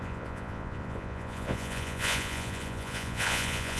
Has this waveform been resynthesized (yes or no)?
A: yes